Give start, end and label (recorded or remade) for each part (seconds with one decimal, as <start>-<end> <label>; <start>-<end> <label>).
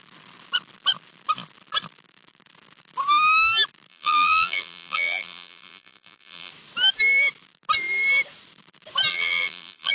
0.0-3.9 recorded; 3.9-6.5 remade; 6.5-9.1 recorded; 9.1-9.9 remade